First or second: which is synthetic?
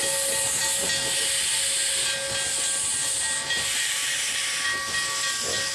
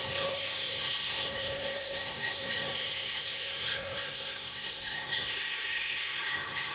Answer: second